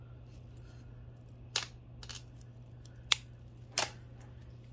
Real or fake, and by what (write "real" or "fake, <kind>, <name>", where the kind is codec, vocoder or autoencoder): real